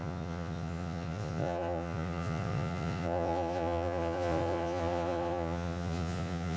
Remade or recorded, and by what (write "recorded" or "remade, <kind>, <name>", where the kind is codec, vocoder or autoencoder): remade, vocoder, Vocos